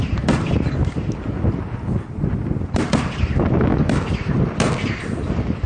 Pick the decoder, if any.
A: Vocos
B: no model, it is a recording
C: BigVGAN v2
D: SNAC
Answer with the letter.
B